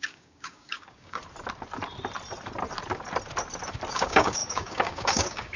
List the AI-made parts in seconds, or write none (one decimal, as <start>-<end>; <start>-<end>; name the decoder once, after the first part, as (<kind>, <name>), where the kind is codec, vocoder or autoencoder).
0.0-1.2 (codec, DAC); 3.9-5.6